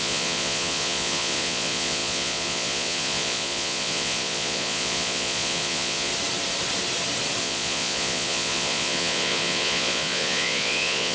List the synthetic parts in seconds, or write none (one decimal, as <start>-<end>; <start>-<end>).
0.0-6.1; 7.4-11.1

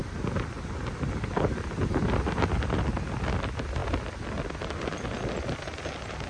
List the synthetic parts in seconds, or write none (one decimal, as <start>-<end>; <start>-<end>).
none